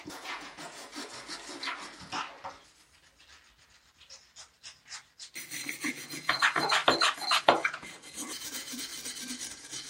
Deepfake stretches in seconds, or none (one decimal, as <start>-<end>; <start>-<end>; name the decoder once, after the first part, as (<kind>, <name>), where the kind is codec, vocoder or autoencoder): 0.0-0.9 (vocoder, Vocos); 5.8-6.8; 7.4-8.9; 9.5-9.9